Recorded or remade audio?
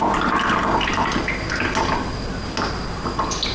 recorded